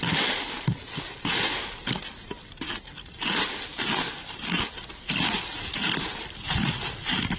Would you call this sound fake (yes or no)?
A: no